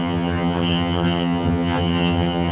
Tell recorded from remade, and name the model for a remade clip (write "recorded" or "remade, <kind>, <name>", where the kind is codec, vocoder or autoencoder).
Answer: remade, vocoder, HiFi-GAN